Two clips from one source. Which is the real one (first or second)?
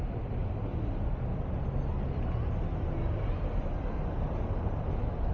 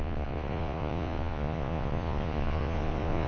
first